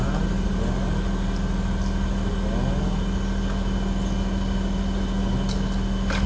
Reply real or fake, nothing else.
real